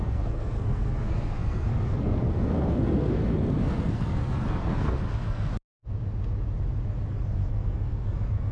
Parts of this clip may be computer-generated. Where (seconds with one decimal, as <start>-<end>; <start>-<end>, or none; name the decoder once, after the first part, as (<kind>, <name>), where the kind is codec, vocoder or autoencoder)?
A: 0.0-5.5 (codec, SNAC); 7.1-8.5